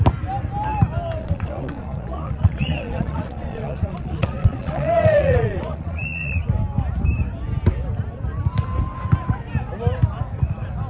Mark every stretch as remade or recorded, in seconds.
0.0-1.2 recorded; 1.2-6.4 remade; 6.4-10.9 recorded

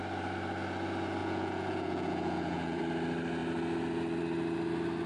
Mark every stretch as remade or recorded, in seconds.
0.0-1.2 recorded; 1.2-2.8 remade; 2.8-5.1 recorded

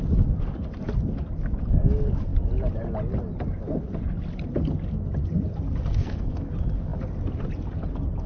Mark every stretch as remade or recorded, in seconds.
0.0-5.9 recorded; 5.9-6.5 remade; 6.5-8.3 recorded

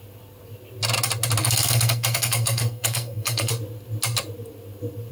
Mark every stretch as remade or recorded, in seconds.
0.0-1.4 recorded; 1.4-3.5 remade; 3.5-5.1 recorded

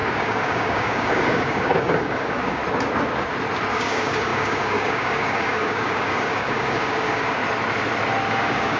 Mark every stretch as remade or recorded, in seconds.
0.0-2.6 remade; 2.6-3.7 recorded; 3.7-7.4 remade; 7.4-8.3 recorded; 8.3-8.8 remade

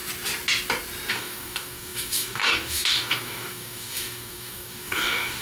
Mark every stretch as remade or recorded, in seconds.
0.0-1.1 recorded; 1.1-5.4 remade

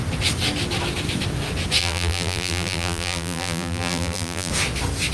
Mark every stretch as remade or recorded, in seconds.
0.0-1.8 recorded; 1.8-4.5 remade; 4.5-5.1 recorded